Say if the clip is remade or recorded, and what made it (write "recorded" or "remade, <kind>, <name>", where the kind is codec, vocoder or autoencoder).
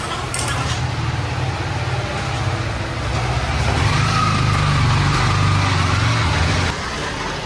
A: recorded